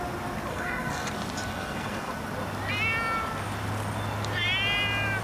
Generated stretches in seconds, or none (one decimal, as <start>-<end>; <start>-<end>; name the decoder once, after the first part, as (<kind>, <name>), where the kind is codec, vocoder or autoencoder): 0.5-1.1 (codec, SNAC); 1.5-2.1